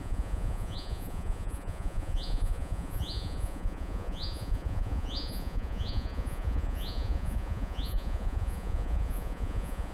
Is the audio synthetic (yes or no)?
yes